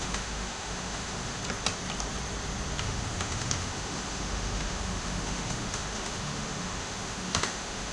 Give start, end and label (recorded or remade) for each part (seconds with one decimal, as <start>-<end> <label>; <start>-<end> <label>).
0.0-1.4 remade; 1.4-2.8 recorded; 2.8-7.9 remade